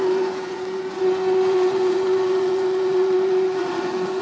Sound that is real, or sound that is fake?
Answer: fake